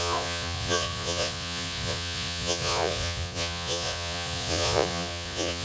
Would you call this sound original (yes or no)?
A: no